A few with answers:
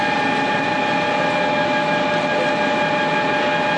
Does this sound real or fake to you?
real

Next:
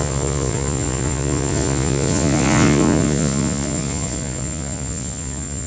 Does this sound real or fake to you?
fake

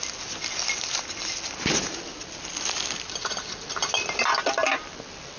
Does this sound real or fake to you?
real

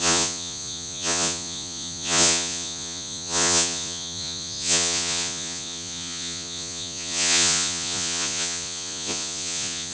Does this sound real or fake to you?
fake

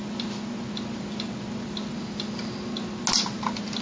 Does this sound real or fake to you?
real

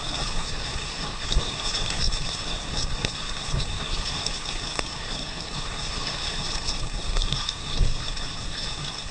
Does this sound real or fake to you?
fake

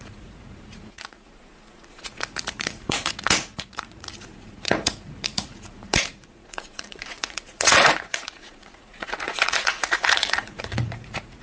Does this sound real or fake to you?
fake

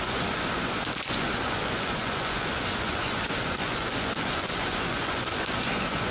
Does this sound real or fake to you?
fake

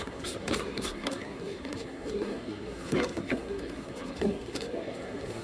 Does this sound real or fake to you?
fake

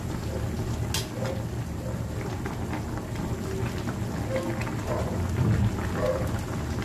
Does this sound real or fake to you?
real